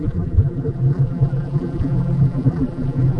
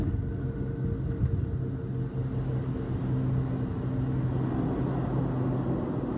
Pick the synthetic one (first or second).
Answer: first